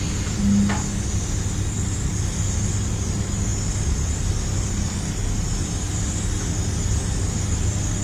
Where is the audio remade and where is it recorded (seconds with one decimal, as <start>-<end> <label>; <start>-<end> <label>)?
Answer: 0.0-8.0 recorded